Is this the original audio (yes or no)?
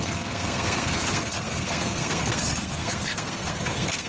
no